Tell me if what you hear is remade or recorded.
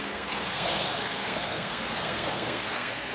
remade